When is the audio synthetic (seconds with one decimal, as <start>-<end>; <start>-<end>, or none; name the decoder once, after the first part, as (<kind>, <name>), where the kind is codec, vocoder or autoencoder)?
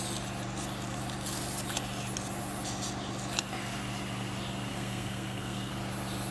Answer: 4.7-5.7 (codec, SNAC)